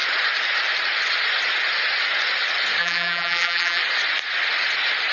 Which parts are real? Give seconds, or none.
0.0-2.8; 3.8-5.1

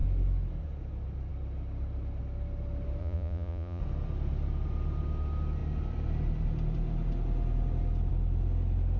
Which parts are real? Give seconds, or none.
0.0-3.0; 3.8-9.0

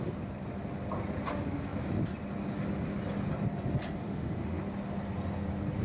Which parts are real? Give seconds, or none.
0.0-4.0; 4.6-5.8

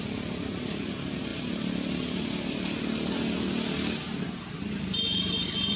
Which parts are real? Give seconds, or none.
0.0-5.8

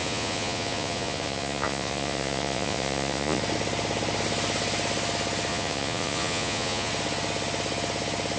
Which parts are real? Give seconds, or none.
3.4-5.5; 6.9-8.4

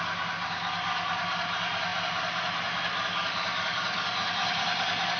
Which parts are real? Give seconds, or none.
0.0-5.2

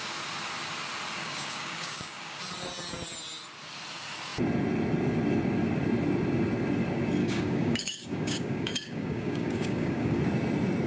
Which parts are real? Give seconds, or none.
0.0-1.2; 2.4-7.2; 10.2-10.9